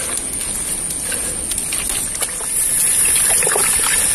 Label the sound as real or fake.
real